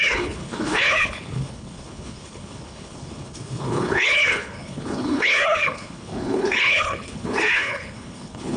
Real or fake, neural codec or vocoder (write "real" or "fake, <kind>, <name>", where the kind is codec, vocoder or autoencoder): fake, codec, HILCodec